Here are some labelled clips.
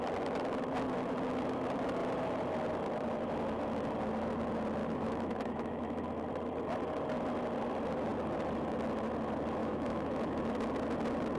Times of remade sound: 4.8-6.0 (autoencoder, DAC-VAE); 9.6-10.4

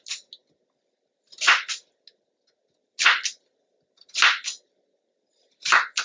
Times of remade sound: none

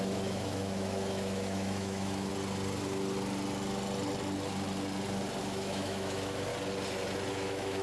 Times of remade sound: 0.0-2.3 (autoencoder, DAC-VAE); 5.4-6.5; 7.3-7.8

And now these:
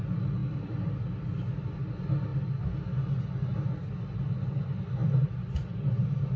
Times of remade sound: none

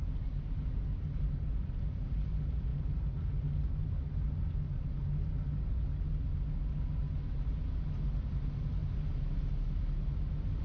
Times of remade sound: none